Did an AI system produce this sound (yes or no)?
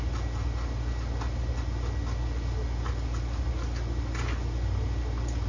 no